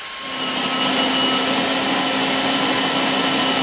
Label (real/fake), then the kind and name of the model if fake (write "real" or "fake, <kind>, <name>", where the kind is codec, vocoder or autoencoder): real